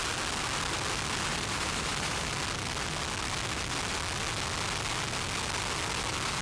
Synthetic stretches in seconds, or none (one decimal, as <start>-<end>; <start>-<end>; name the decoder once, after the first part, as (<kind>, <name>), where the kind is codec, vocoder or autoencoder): 1.3-2.3 (vocoder, BigVGAN v2)